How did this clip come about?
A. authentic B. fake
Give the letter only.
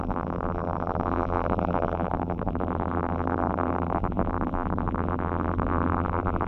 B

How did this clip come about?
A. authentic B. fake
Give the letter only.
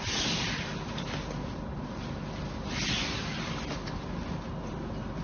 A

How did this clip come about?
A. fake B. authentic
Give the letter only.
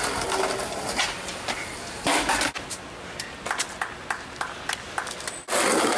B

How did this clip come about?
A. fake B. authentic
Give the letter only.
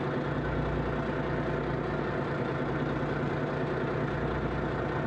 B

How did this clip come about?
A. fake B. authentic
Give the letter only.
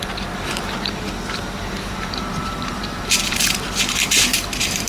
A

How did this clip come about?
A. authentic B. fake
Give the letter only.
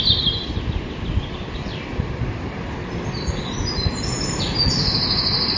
A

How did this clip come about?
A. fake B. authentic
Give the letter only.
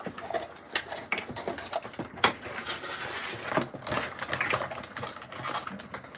B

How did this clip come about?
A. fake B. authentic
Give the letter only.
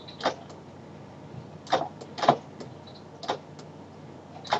B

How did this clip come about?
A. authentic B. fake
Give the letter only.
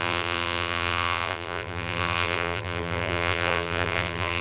B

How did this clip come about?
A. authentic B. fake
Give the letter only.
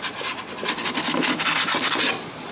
A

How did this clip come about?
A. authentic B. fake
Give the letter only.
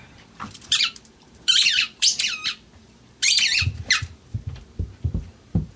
B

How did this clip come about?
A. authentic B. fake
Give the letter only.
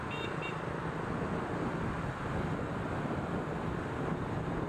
A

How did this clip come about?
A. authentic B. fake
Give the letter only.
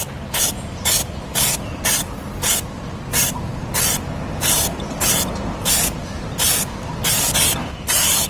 A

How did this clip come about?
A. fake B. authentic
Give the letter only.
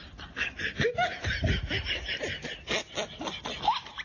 B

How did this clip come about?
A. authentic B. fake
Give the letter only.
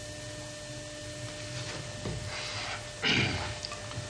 A